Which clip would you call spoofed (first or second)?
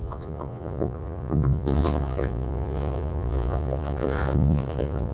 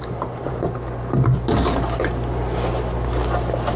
first